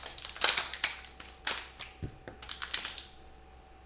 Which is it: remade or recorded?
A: recorded